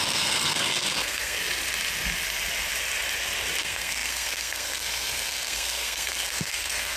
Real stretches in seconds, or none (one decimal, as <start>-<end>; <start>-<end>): 1.4-3.6